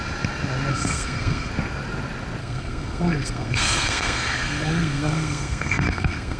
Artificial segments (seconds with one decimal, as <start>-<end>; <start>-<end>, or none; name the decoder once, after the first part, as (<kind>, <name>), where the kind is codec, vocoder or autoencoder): 0.7-1.5 (codec, SNAC); 2.4-6.4